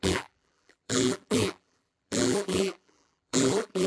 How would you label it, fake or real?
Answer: fake